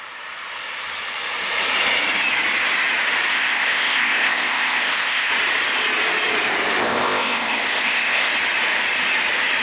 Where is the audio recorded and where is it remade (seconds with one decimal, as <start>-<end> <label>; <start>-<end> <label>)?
0.0-3.3 recorded; 3.3-5.3 remade; 5.3-6.8 recorded; 6.8-8.3 remade; 8.3-9.6 recorded